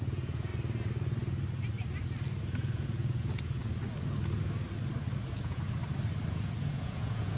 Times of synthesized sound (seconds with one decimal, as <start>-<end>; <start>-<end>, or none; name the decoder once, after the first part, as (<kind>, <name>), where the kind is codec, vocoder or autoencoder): 0.0-0.5 (vocoder, Vocos); 2.4-3.6; 5.2-5.8; 6.3-7.4

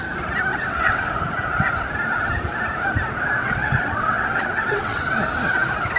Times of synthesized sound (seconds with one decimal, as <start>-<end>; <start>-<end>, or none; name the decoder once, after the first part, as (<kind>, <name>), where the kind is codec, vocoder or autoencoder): 0.5-1.1 (vocoder, WaveNeXt); 3.4-5.0

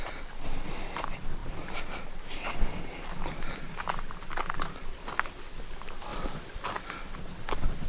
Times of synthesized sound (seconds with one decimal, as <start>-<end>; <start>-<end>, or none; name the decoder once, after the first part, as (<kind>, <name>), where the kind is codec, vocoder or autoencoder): 6.1-6.7 (vocoder, BigVGAN v2)

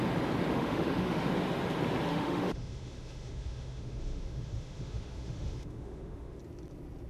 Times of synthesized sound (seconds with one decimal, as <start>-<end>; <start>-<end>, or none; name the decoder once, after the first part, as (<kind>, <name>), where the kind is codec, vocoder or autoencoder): 0.5-1.3 (autoencoder, DAC-VAE); 2.1-6.4

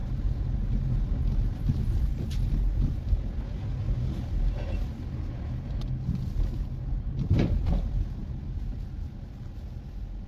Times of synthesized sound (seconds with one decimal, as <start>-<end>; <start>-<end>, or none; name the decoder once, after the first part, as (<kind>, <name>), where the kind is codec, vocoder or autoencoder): none

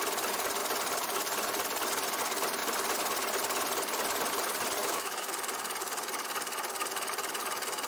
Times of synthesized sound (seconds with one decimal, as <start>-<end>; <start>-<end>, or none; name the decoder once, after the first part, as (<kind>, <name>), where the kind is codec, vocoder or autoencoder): 4.8-5.3 (autoencoder, DAC-VAE)

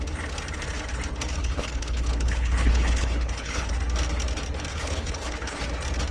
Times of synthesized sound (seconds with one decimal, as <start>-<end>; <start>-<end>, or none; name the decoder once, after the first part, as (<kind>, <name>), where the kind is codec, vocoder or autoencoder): 1.4-3.7 (codec, HILCodec); 4.7-5.6